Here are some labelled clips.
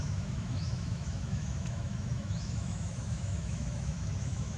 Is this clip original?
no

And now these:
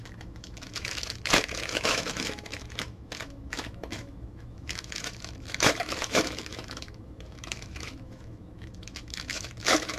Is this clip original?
no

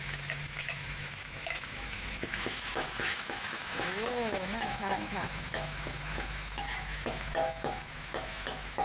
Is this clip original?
no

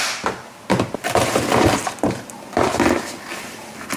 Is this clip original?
yes